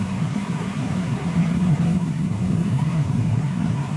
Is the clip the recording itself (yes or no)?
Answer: no